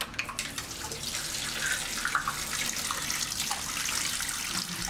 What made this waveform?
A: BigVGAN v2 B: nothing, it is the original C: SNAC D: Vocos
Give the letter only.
B